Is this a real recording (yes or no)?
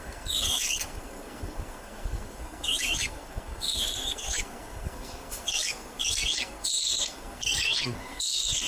no